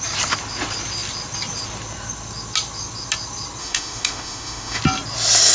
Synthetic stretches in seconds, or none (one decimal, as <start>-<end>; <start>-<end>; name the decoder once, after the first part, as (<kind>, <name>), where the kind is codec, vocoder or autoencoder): 3.6-4.8 (autoencoder, DAC-VAE)